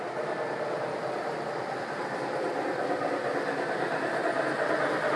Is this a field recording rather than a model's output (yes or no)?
yes